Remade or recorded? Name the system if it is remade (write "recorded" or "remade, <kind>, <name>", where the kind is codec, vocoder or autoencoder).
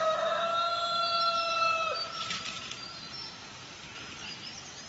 recorded